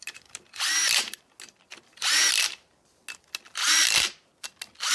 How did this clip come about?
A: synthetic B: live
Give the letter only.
B